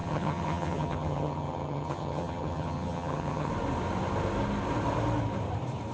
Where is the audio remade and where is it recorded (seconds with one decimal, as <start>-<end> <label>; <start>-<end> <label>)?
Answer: 0.0-3.5 remade; 3.5-5.9 recorded